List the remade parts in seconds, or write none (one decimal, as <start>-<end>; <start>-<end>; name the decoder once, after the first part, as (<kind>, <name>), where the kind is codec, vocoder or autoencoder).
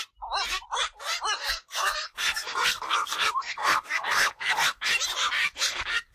1.4-4.9 (codec, SNAC); 5.4-6.1